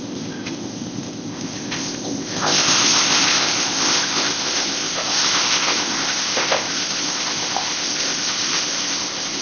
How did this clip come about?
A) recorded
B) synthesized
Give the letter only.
B